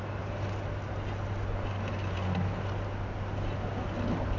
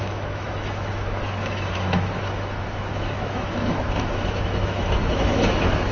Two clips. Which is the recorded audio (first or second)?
first